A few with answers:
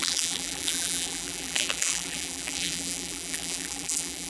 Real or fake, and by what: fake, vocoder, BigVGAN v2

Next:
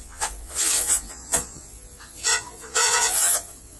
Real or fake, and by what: fake, vocoder, Vocos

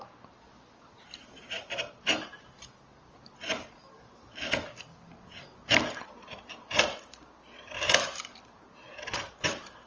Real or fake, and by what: real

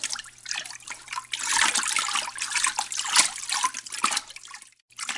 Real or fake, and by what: real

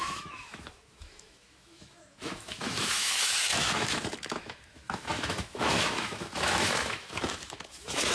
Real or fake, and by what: fake, autoencoder, DAC-VAE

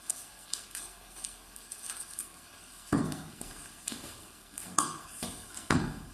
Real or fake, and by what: fake, codec, SNAC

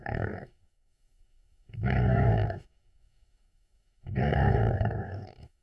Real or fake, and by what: fake, codec, DAC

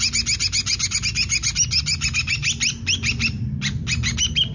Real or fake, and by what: real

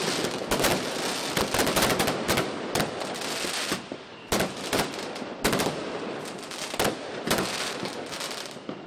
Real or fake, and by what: real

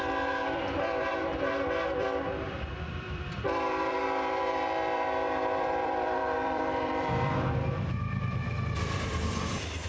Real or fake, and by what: fake, vocoder, BigVGAN v2